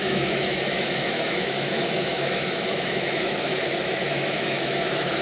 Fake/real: fake